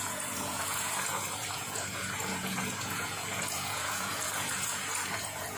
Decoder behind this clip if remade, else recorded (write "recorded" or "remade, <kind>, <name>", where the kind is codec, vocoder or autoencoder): remade, vocoder, Vocos